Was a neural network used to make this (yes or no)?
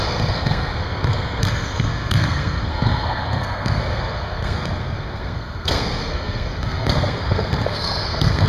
yes